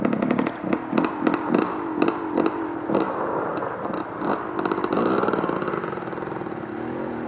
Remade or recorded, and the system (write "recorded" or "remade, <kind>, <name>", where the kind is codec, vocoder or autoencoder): recorded